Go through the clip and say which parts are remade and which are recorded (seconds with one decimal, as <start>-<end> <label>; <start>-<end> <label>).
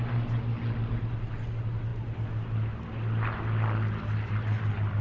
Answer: 0.0-5.0 recorded